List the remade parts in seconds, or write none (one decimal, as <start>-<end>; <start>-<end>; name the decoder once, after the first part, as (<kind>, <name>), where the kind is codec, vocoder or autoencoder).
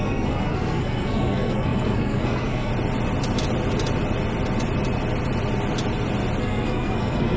0.0-2.7 (codec, SNAC); 6.4-7.4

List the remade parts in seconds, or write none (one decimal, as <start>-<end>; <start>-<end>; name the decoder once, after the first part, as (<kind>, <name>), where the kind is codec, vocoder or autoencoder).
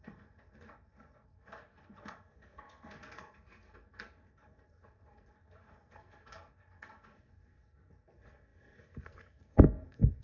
0.0-10.2 (codec, SNAC)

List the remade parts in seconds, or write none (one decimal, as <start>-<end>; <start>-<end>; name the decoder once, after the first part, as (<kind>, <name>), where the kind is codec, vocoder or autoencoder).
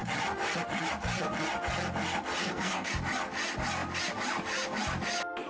2.4-2.9 (codec, SNAC)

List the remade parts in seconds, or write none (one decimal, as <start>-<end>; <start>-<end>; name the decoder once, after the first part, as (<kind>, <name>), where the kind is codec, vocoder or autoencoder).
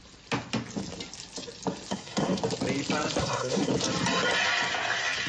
1.9-2.4 (codec, SNAC); 3.2-3.7